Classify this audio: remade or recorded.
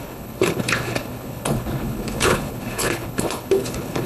remade